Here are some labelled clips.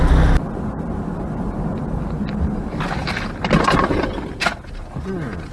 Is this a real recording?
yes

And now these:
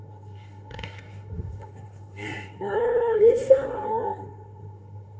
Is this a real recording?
no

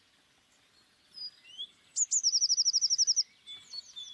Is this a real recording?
yes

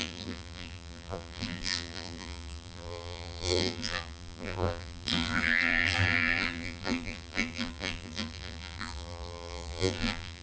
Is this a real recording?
no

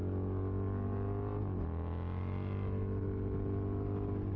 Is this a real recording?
yes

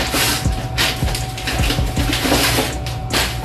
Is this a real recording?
yes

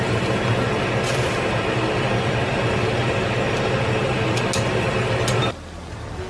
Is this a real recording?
yes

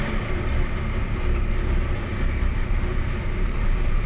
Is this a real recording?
yes